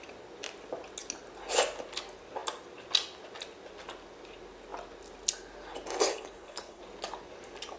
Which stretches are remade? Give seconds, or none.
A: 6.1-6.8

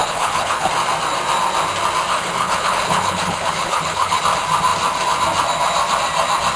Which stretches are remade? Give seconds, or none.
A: 0.0-0.7; 2.1-4.2

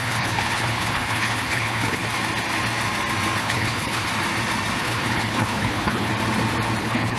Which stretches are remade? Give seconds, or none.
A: 0.0-2.0; 3.4-4.1; 4.8-6.1; 6.8-7.2

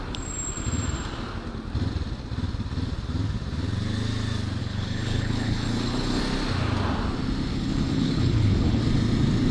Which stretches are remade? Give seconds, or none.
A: 4.6-6.2; 7.5-8.8